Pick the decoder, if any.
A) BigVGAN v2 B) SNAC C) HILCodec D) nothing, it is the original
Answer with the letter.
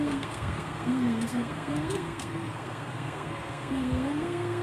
B